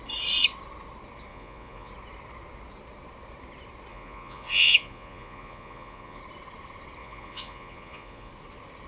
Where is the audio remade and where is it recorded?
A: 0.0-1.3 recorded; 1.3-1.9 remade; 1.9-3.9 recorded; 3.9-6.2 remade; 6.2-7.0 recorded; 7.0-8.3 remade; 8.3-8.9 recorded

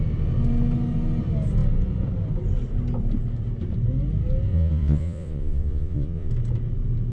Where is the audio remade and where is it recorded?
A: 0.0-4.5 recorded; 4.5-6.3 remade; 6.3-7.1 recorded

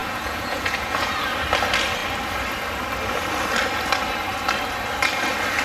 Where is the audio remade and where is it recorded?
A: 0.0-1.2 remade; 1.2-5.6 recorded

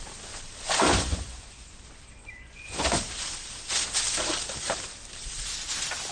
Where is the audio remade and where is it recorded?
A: 0.0-0.9 recorded; 0.9-1.7 remade; 1.7-2.2 recorded; 2.2-3.0 remade; 3.0-6.1 recorded

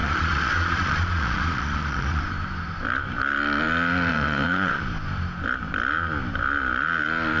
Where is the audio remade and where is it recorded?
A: 0.0-2.2 remade; 2.2-4.1 recorded; 4.1-4.8 remade; 4.8-7.4 recorded